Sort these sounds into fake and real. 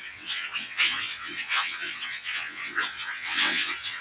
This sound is fake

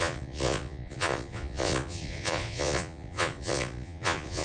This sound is fake